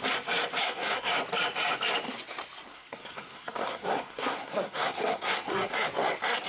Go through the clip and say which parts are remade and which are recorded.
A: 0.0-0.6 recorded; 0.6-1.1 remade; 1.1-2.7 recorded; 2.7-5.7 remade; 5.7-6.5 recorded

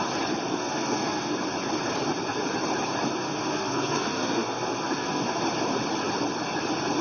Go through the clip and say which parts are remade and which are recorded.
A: 0.0-0.5 recorded; 0.5-1.3 remade; 1.3-3.2 recorded; 3.2-5.4 remade; 5.4-7.0 recorded

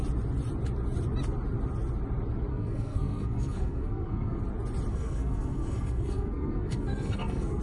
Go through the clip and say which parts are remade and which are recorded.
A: 0.0-2.5 recorded; 2.5-4.4 remade; 4.4-4.9 recorded; 4.9-7.6 remade

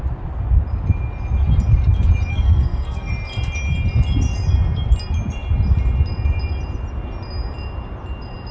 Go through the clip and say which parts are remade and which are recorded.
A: 0.0-2.3 recorded; 2.3-3.1 remade; 3.1-8.5 recorded

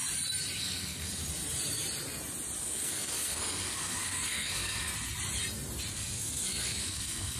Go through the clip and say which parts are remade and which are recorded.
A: 0.0-0.6 recorded; 0.6-1.2 remade; 1.2-2.6 recorded; 2.6-4.9 remade; 4.9-5.9 recorded; 5.9-7.4 remade

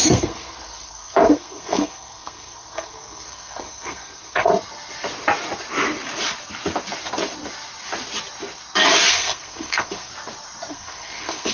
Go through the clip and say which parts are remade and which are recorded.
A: 0.0-4.5 remade; 4.5-9.1 recorded; 9.1-10.1 remade; 10.1-10.7 recorded; 10.7-11.5 remade

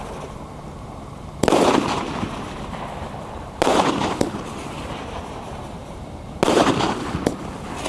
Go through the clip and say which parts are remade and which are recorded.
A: 0.0-7.9 recorded

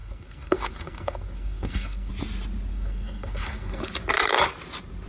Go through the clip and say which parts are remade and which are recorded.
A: 0.0-2.1 remade; 2.1-2.7 recorded; 2.7-3.8 remade; 3.8-5.1 recorded